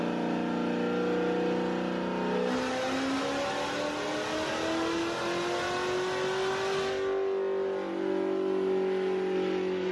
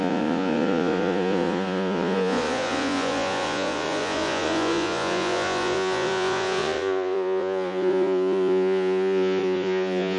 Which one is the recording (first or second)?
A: first